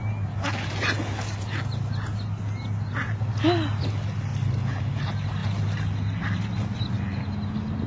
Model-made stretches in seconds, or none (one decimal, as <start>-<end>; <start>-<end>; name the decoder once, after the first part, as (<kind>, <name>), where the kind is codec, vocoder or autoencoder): none

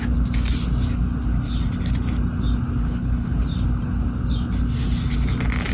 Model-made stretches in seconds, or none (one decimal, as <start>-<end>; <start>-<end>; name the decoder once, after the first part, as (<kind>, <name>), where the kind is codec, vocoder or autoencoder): 2.8-3.4 (codec, HILCodec)